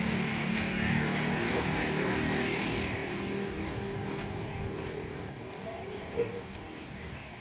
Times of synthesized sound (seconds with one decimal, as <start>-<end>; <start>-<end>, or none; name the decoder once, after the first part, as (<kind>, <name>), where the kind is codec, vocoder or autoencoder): 0.0-7.4 (codec, DAC)